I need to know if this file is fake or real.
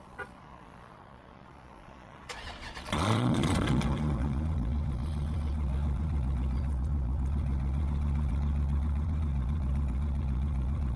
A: fake